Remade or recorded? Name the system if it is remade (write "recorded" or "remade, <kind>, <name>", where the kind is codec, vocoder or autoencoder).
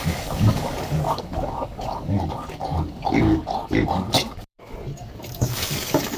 remade, codec, DAC